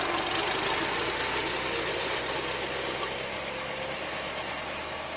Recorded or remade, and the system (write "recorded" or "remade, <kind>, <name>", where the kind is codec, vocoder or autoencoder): recorded